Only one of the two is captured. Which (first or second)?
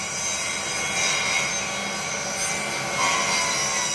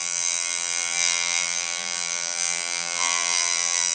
first